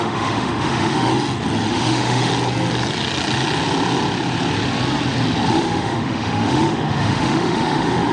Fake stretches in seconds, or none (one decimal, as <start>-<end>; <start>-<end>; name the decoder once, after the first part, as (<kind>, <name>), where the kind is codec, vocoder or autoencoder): 0.0-1.1 (autoencoder, DAC-VAE); 1.7-2.3; 5.5-8.1